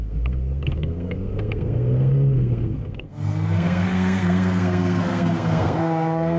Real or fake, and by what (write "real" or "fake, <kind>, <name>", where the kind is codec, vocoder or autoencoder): fake, codec, SNAC